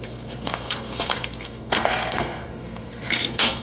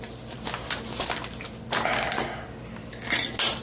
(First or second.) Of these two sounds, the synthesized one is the first